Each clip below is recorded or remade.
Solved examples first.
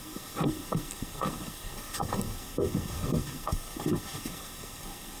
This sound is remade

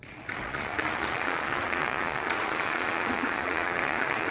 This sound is remade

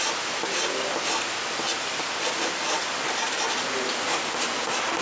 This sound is recorded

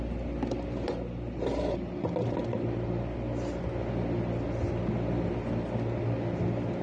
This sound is recorded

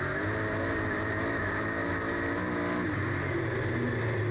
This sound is recorded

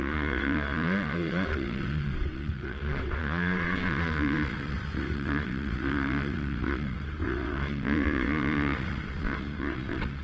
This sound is remade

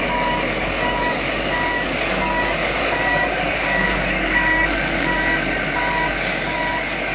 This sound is remade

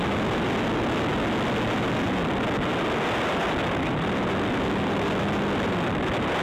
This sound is recorded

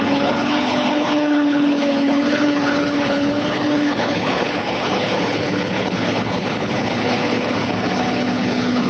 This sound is remade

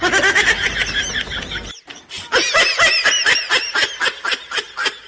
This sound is recorded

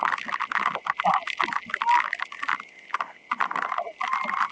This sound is recorded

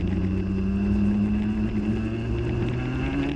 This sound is recorded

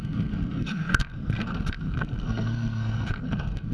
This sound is remade